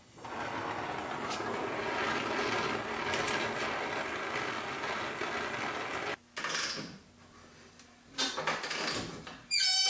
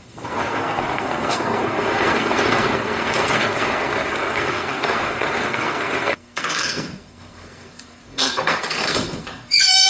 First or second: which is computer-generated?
second